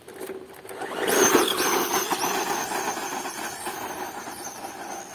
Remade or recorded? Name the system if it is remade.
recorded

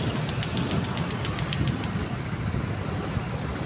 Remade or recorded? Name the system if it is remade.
recorded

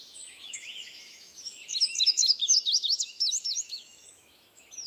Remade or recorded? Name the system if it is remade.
remade, autoencoder, DAC-VAE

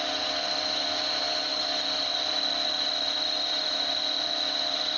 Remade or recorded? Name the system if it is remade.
recorded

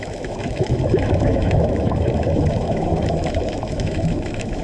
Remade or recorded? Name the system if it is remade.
remade, autoencoder, DAC-VAE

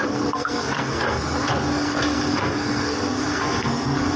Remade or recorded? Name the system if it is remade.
remade, codec, SNAC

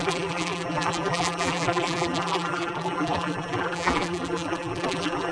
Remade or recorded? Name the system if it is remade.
remade, vocoder, BigVGAN v2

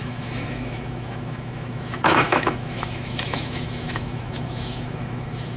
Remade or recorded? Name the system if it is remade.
remade, autoencoder, DAC-VAE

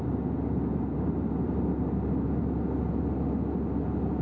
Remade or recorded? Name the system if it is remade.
recorded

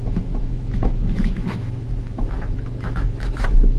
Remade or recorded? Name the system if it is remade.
remade, autoencoder, DAC-VAE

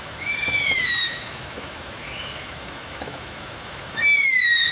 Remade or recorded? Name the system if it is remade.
remade, autoencoder, DAC-VAE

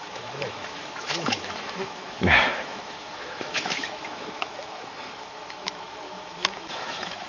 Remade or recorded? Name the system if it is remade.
remade, autoencoder, DAC-VAE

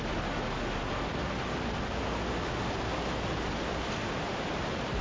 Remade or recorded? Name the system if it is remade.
recorded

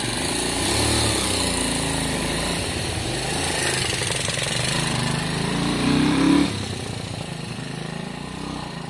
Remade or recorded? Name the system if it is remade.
recorded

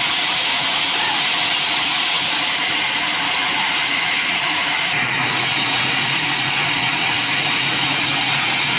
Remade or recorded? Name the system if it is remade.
remade, vocoder, Vocos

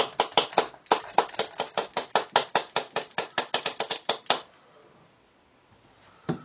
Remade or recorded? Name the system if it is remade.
recorded